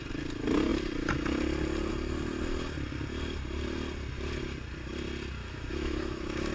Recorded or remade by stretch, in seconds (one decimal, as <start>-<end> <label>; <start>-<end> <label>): 0.0-5.4 recorded; 5.4-6.5 remade